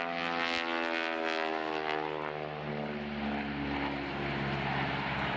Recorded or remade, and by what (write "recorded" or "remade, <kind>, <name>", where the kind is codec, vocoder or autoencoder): recorded